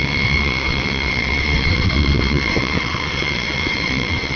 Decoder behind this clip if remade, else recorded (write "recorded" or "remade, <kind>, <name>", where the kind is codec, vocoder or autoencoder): remade, vocoder, WaveNeXt